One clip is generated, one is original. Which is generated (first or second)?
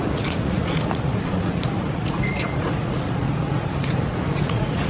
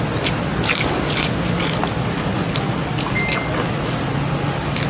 first